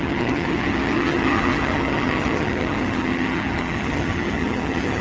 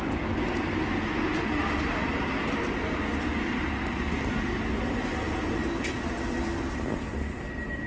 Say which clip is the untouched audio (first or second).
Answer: second